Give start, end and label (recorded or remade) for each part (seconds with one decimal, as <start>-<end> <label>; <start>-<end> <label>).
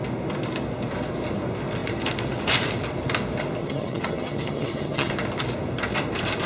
0.0-3.6 recorded; 3.6-5.1 remade; 5.1-6.5 recorded